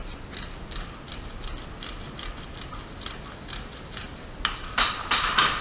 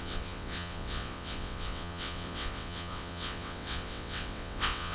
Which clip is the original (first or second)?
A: first